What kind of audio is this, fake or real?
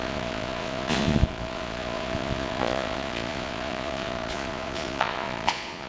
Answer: fake